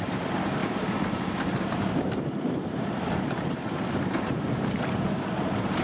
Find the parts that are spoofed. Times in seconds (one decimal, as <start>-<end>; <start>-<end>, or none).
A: 0.0-5.8